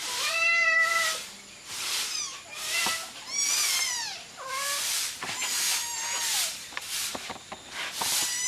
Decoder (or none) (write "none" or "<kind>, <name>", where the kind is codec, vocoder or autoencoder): vocoder, BigVGAN v2